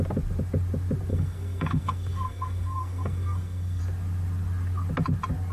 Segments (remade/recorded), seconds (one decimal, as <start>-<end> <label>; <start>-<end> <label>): 0.0-1.1 recorded; 1.1-3.8 remade; 3.8-5.5 recorded